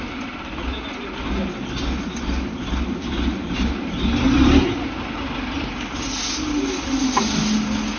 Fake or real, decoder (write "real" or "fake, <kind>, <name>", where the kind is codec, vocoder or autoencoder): real